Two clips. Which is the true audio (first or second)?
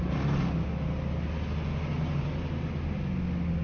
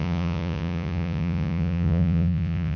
first